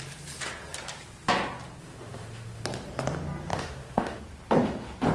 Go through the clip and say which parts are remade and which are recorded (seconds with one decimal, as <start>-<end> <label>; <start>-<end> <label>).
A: 0.0-1.8 recorded; 1.8-2.6 remade; 2.6-3.5 recorded; 3.5-4.2 remade; 4.2-5.1 recorded